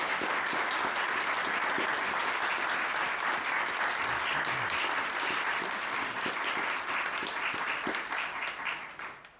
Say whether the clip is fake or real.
real